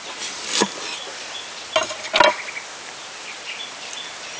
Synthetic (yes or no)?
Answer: no